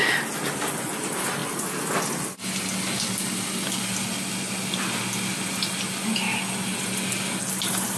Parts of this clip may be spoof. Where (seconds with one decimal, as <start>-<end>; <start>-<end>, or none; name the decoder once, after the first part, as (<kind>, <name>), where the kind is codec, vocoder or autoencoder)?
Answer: none